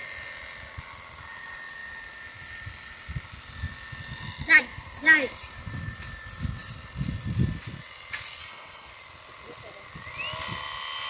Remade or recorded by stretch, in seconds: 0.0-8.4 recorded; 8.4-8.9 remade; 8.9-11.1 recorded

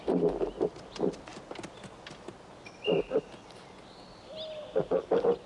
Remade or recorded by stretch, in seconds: 0.0-5.5 recorded

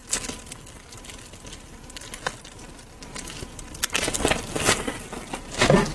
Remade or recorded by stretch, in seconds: 0.0-5.9 recorded

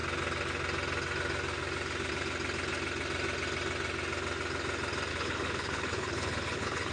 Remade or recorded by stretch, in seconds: 0.0-5.1 recorded; 5.1-6.9 remade